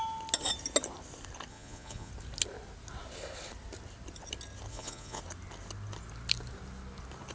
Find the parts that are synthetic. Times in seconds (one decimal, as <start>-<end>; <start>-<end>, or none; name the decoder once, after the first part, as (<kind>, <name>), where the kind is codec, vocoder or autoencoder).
1.5-2.1 (vocoder, Vocos); 4.7-5.2